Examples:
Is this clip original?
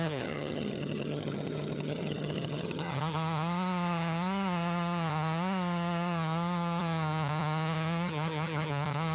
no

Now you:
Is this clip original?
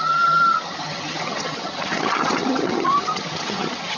no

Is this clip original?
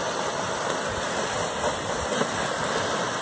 yes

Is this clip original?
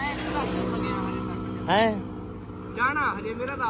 yes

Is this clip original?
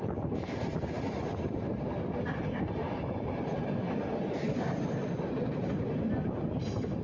yes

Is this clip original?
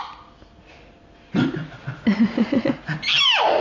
yes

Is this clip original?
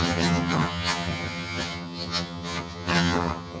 no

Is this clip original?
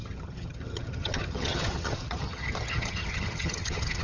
no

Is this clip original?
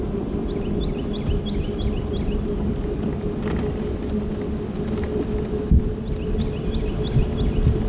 yes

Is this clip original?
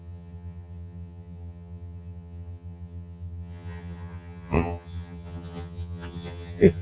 no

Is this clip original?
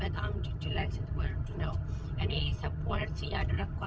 no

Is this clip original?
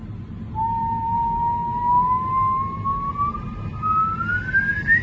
yes